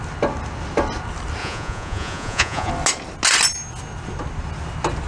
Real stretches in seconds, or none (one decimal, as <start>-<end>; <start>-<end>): 0.0-1.4; 2.7-5.1